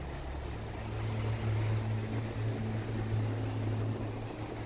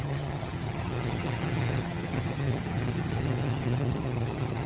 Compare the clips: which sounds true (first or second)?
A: first